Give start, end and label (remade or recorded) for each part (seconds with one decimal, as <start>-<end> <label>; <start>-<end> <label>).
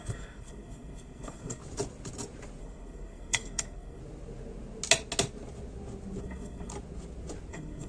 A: 0.0-1.6 remade; 1.6-2.6 recorded; 2.6-4.0 remade; 4.0-6.2 recorded; 6.2-6.7 remade; 6.7-7.5 recorded; 7.5-7.9 remade